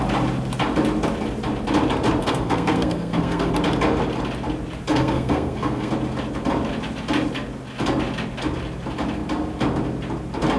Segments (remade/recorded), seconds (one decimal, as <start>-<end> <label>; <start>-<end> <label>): 0.0-2.2 recorded; 2.2-3.5 remade; 3.5-4.9 recorded; 4.9-5.9 remade; 5.9-10.6 recorded